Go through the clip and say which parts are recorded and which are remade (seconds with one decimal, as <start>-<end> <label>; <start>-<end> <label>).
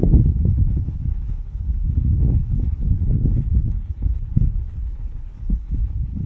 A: 0.0-6.3 remade